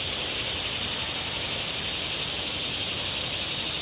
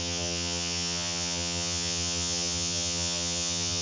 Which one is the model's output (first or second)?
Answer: second